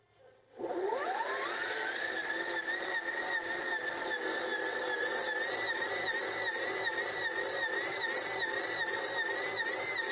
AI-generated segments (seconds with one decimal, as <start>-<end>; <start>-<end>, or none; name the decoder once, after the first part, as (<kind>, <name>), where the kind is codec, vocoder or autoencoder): none